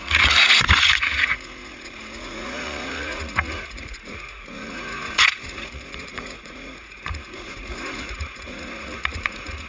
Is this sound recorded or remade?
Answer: remade